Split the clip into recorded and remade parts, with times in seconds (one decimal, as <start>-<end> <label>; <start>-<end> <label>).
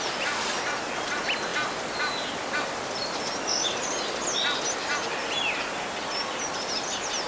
0.0-1.5 recorded; 1.5-3.2 remade; 3.2-7.3 recorded